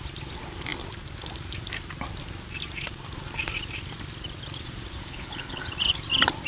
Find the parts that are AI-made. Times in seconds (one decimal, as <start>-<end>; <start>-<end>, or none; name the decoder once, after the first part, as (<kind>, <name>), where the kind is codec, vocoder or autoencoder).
5.0-5.6 (codec, HILCodec)